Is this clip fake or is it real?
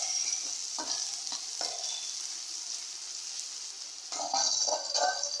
real